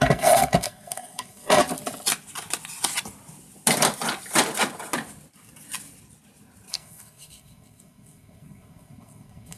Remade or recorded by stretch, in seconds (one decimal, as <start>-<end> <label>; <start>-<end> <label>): 0.0-1.6 remade; 1.6-6.7 recorded; 6.7-9.6 remade